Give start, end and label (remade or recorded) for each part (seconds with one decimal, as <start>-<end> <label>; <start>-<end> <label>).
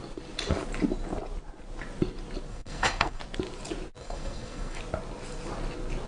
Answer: 0.0-2.5 recorded; 2.5-3.2 remade; 3.2-4.0 recorded; 4.0-4.8 remade; 4.8-6.1 recorded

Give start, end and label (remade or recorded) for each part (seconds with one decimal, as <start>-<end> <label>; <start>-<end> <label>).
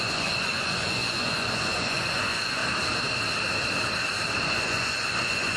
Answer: 0.0-2.6 remade; 2.6-4.5 recorded; 4.5-5.6 remade